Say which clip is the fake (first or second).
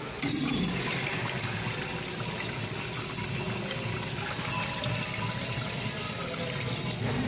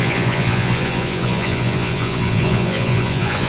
second